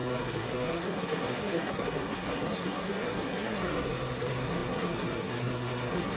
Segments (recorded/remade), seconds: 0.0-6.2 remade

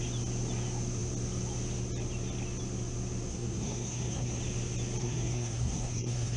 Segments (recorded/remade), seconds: 0.0-3.3 recorded; 3.3-4.4 remade; 4.4-5.0 recorded; 5.0-6.4 remade

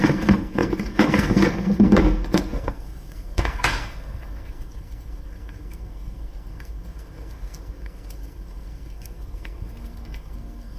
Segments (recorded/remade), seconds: 0.0-10.8 remade

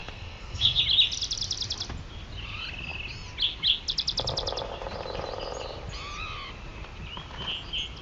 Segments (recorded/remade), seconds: 0.0-0.8 remade; 0.8-8.0 recorded

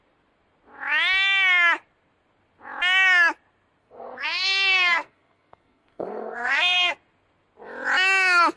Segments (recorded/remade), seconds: 0.0-3.8 recorded; 3.8-6.9 remade; 6.9-8.6 recorded

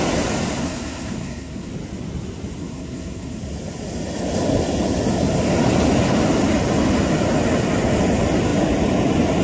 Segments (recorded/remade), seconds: 0.0-0.6 recorded; 0.6-1.7 remade; 1.7-2.6 recorded; 2.6-3.4 remade; 3.4-9.4 recorded

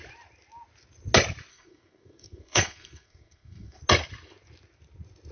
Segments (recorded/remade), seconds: 0.0-1.5 recorded; 1.5-3.8 remade; 3.8-5.3 recorded

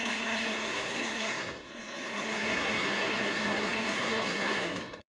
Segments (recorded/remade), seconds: 0.0-5.2 remade